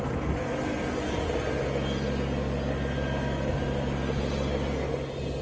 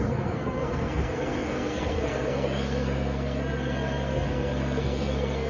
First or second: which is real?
first